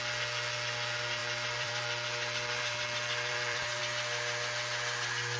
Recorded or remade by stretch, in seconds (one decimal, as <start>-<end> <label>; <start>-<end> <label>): 0.0-1.2 recorded; 1.2-3.8 remade; 3.8-5.4 recorded